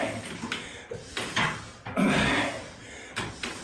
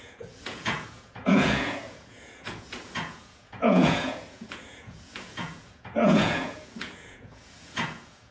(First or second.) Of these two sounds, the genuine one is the first